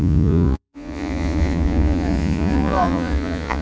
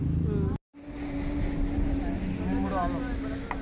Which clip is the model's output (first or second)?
first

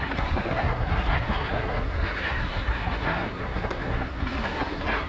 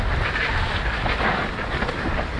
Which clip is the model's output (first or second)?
first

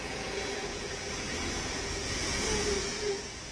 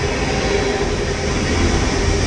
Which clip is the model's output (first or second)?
first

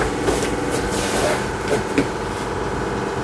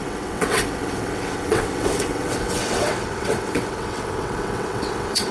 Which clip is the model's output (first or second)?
second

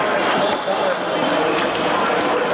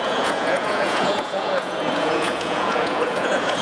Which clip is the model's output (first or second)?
second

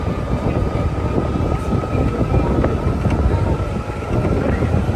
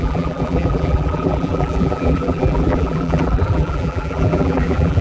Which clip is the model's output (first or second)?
second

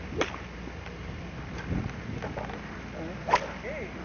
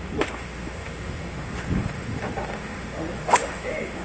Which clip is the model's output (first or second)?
second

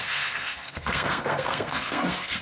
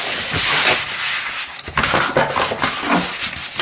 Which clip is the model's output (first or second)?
first